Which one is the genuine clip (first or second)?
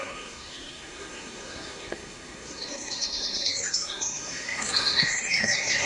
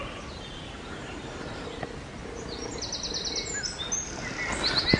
second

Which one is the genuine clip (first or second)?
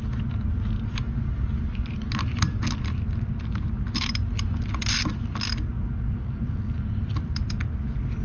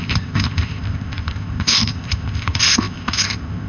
first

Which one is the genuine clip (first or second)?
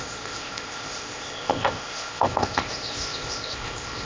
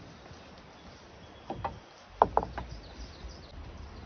second